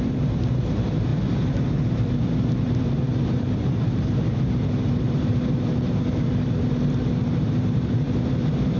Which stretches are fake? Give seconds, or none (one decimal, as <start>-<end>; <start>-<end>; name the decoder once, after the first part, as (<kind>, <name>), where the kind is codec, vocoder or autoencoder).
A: 0.0-1.1 (vocoder, BigVGAN v2); 1.7-8.8